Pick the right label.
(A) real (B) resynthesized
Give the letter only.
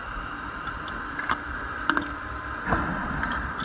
A